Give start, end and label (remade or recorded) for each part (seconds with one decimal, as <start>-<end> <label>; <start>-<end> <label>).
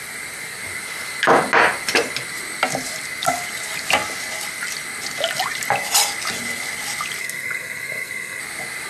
0.0-7.2 recorded; 7.2-8.4 remade; 8.4-8.9 recorded